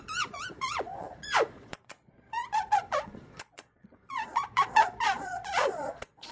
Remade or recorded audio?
remade